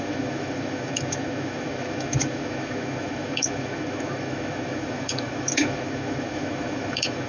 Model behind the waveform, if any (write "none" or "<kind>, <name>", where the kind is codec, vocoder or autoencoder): autoencoder, DAC-VAE